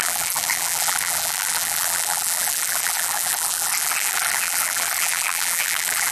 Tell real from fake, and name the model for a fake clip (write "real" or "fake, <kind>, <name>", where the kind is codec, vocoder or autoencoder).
fake, vocoder, BigVGAN v2